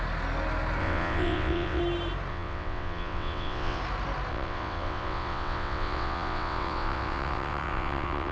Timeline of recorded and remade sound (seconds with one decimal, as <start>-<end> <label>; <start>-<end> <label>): 0.0-0.8 recorded; 0.8-1.8 remade; 1.8-2.3 recorded; 2.3-3.8 remade; 3.8-4.3 recorded; 4.3-8.3 remade